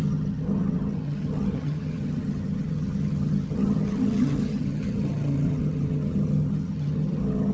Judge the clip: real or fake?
fake